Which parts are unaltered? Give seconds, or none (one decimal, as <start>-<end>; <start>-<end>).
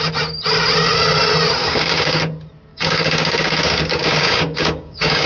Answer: 0.0-1.6; 2.2-2.7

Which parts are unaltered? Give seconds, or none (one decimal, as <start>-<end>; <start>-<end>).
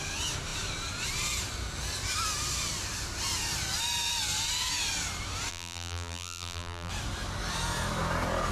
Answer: 0.0-5.5; 6.9-8.5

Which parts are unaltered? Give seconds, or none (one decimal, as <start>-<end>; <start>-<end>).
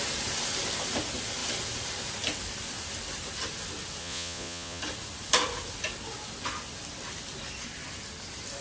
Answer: 0.0-4.0; 4.8-8.6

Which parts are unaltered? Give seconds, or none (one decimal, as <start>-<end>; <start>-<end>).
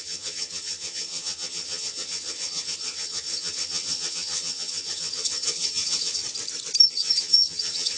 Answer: 6.2-6.9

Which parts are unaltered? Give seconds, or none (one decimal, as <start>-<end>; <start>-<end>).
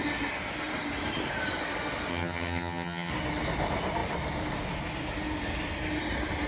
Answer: 0.0-2.1; 3.1-6.5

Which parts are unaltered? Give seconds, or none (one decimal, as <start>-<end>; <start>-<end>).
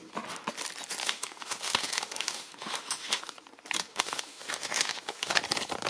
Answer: 0.0-1.0; 3.2-3.9; 5.4-5.9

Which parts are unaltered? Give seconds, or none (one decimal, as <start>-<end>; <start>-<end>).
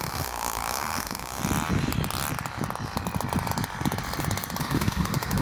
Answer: 1.4-4.6